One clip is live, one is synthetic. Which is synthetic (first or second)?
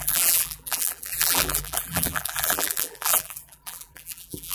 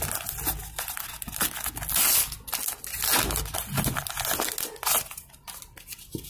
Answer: first